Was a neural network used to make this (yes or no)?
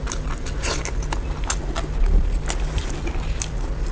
no